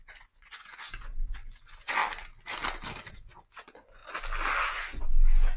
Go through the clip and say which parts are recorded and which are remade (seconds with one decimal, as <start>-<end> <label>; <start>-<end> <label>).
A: 0.0-2.0 remade; 2.0-3.1 recorded; 3.1-4.0 remade; 4.0-4.6 recorded; 4.6-5.6 remade

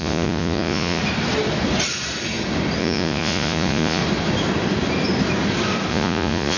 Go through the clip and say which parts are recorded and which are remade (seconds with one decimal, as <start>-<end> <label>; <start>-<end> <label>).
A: 0.0-1.0 remade; 1.0-2.8 recorded; 2.8-4.0 remade; 4.0-5.9 recorded; 5.9-6.6 remade

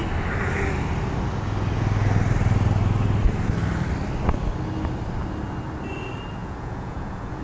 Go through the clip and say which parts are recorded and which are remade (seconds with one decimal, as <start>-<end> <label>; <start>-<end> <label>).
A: 0.0-6.4 recorded; 6.4-7.4 remade

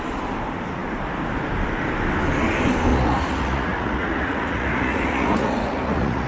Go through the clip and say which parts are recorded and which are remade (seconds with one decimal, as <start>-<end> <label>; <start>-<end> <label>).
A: 0.0-2.9 recorded; 2.9-6.3 remade